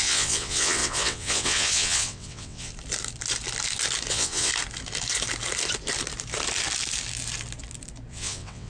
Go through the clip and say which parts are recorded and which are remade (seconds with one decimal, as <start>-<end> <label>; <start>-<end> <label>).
0.0-2.7 remade; 2.7-4.1 recorded; 4.1-4.5 remade; 4.5-8.1 recorded; 8.1-8.7 remade